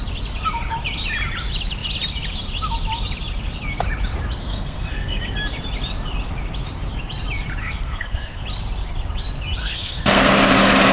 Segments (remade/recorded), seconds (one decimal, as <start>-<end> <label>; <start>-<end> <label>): 0.0-4.4 recorded; 4.4-5.2 remade; 5.2-7.6 recorded; 7.6-8.4 remade; 8.4-9.6 recorded; 9.6-10.3 remade; 10.3-10.9 recorded